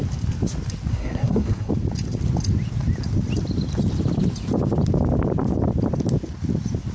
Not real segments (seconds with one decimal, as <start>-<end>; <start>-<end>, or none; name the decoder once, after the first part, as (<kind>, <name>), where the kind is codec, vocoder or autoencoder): 0.9-1.7 (codec, SNAC)